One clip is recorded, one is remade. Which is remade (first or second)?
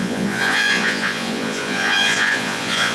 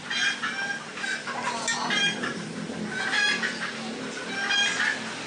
first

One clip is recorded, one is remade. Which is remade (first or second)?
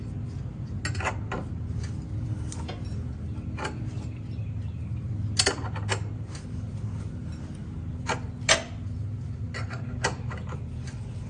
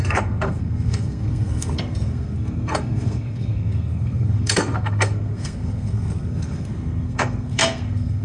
second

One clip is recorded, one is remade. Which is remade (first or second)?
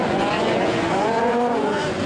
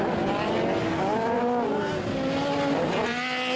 first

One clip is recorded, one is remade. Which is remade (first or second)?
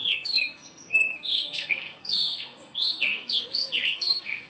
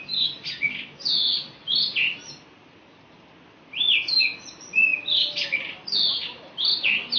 first